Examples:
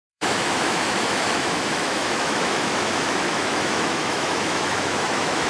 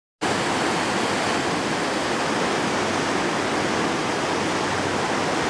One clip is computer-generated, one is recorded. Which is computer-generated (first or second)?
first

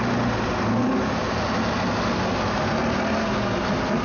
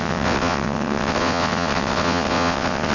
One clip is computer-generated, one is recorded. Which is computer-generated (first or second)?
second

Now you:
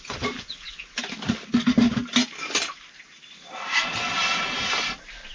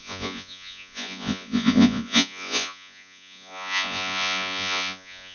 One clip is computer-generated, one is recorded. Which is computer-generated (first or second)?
second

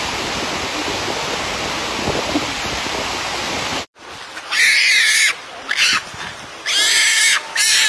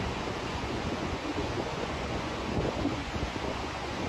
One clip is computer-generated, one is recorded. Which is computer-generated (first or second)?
second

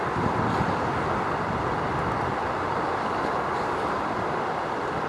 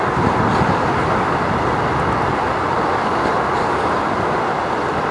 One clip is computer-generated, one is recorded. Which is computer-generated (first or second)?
first